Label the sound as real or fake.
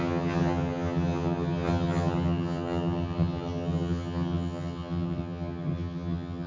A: fake